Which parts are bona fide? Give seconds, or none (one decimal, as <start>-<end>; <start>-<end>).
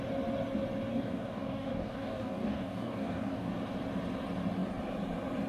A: 0.0-0.9; 3.5-5.5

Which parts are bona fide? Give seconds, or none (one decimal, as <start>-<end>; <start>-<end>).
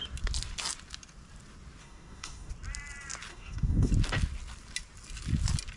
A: 0.0-1.8; 2.5-3.3; 3.9-5.8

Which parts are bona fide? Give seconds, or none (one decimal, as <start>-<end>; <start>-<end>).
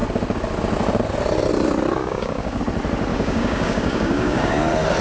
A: 0.0-2.0; 2.6-3.1; 4.5-5.0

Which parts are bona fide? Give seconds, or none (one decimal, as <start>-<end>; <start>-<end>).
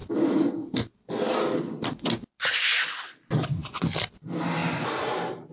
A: 0.0-5.5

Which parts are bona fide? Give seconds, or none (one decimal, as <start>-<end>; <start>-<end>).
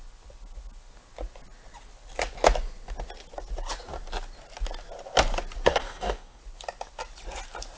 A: 0.0-5.7; 6.4-7.8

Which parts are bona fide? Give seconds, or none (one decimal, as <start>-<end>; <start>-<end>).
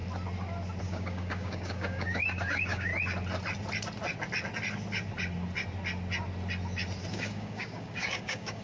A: 0.0-0.8; 2.9-7.1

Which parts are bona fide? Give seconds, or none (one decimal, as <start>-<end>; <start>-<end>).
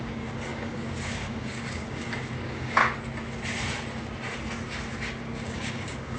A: 2.8-5.2